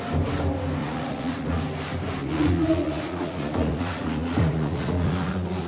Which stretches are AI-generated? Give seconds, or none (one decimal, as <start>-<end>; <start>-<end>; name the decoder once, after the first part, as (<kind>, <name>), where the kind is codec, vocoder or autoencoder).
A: 0.8-1.6 (vocoder, Vocos); 2.2-5.7